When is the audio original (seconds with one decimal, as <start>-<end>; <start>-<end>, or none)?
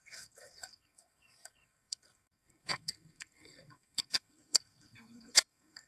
none